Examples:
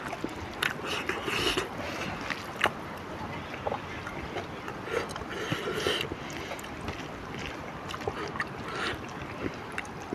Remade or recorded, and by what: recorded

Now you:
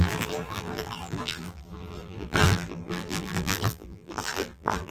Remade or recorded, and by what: remade, vocoder, BigVGAN v2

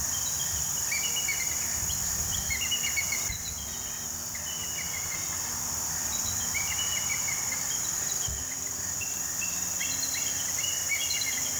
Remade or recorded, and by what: remade, vocoder, BigVGAN v2